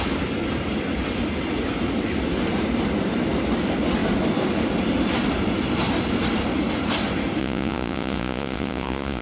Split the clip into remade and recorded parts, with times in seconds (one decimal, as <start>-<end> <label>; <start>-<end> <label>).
0.0-7.4 recorded; 7.4-9.2 remade